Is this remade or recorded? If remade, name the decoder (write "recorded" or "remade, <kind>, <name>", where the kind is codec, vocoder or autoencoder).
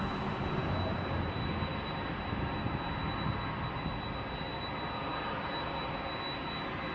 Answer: recorded